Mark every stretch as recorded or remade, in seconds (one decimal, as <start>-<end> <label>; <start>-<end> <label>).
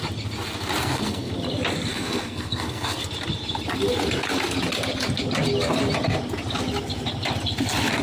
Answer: 0.0-0.8 recorded; 0.8-1.3 remade; 1.3-1.9 recorded; 1.9-3.0 remade; 3.0-8.0 recorded